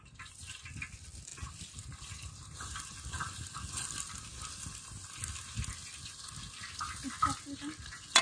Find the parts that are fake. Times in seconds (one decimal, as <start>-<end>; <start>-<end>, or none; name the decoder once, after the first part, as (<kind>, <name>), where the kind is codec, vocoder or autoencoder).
none